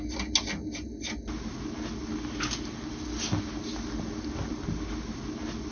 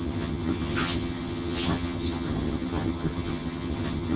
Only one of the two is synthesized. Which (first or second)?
second